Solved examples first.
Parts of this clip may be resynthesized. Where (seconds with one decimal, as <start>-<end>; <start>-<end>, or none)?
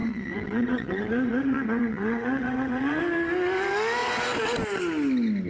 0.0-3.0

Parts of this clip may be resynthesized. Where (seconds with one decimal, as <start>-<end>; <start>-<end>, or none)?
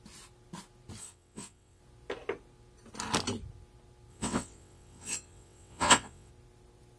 1.0-1.8; 4.1-6.3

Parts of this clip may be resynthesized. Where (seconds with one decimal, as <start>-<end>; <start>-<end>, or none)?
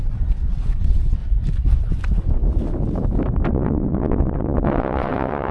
0.0-1.2; 3.5-5.5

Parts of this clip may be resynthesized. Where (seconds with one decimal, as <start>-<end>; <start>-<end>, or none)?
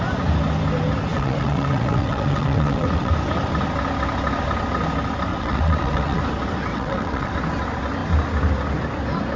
1.1-3.1; 5.3-6.2; 6.7-7.3